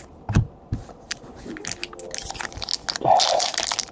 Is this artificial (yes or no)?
no